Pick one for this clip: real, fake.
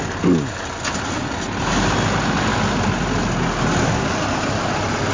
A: real